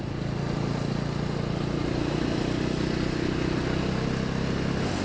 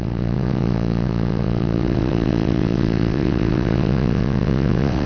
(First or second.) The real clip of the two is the first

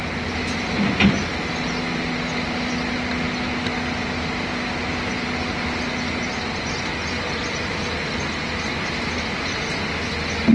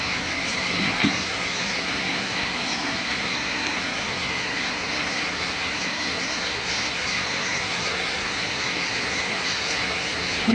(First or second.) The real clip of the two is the first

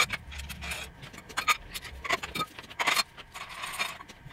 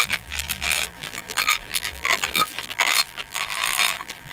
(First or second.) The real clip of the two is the first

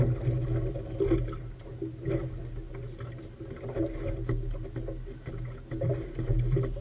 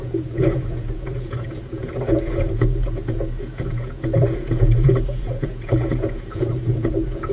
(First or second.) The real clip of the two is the first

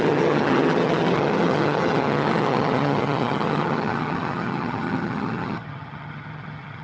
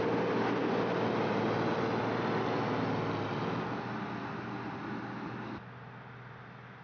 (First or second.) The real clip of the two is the second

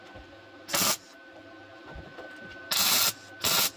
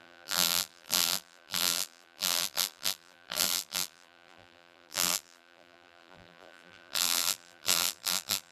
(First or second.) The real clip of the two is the first